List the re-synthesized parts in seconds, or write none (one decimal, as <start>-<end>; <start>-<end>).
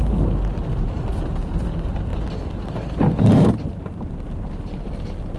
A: none